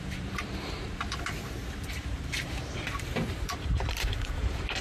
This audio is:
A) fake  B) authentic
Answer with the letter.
A